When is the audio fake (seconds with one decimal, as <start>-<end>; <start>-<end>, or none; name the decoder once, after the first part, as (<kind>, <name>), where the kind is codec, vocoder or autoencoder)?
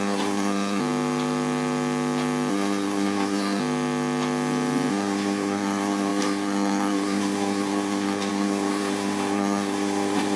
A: 0.0-0.8 (codec, SNAC); 2.5-3.6; 4.9-10.4